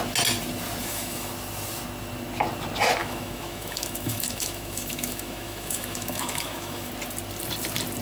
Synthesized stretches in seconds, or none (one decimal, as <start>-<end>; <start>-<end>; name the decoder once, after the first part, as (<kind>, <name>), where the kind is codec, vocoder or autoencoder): 0.8-1.3 (autoencoder, DAC-VAE); 3.0-6.9